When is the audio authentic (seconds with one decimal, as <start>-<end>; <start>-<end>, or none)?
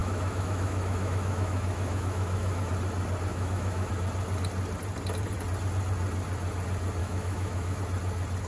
2.7-3.3; 3.9-7.0; 7.8-8.5